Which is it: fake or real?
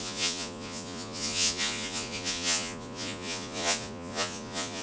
fake